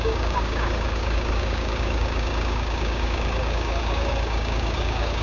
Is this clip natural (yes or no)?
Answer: no